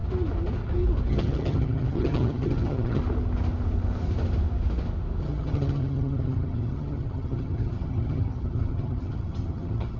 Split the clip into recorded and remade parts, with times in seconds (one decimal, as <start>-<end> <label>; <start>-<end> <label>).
0.0-1.1 recorded; 1.1-3.0 remade; 3.0-5.2 recorded; 5.2-10.0 remade